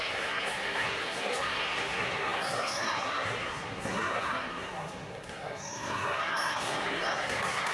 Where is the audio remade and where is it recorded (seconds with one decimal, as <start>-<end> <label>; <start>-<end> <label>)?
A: 0.0-7.7 remade